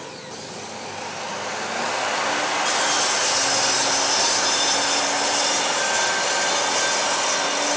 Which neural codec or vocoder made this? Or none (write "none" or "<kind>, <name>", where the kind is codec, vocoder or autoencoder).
none